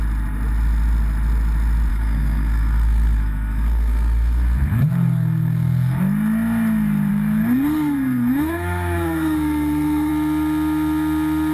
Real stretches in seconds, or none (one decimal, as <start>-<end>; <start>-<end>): 0.0-1.9; 6.0-7.1; 10.1-11.5